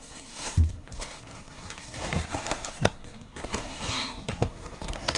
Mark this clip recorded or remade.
remade